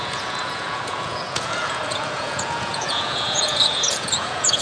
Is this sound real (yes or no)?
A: no